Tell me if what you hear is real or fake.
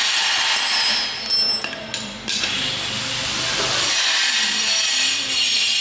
real